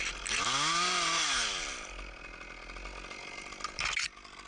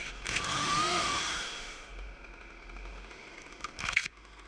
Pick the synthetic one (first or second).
second